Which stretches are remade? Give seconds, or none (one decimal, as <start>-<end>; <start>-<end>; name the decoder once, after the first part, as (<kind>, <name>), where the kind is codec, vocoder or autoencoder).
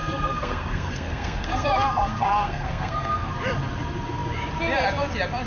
0.0-3.3 (codec, SNAC)